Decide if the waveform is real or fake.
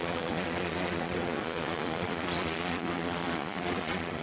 fake